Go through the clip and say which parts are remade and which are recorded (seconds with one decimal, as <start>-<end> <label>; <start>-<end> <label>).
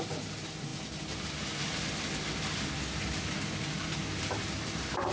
0.0-0.7 remade; 0.7-3.8 recorded; 3.8-5.1 remade